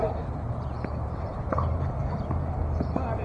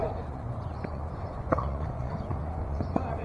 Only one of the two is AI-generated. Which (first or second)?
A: second